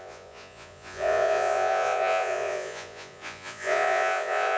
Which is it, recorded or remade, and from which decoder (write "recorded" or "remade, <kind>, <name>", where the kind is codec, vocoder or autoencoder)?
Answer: remade, vocoder, Vocos